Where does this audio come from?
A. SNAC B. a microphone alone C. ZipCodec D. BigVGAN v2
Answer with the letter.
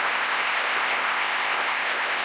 C